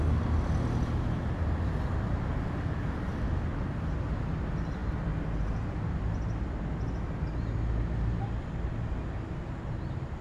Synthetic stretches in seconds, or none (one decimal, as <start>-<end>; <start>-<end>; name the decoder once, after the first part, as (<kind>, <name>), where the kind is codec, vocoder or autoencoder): none

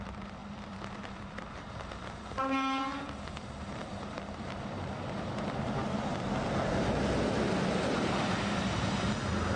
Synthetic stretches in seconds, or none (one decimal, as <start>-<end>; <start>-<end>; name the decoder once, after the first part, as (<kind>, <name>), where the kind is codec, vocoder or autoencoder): 0.0-6.1 (vocoder, BigVGAN v2); 6.7-9.6

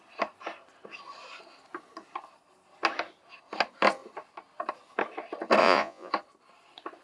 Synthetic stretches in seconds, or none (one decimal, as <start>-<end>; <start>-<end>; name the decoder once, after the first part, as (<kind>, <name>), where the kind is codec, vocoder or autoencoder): 5.6-6.1 (vocoder, Vocos)